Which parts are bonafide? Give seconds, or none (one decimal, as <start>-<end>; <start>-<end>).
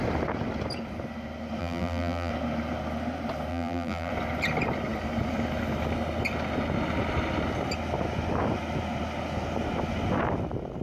0.0-1.6; 2.3-3.5; 4.1-10.8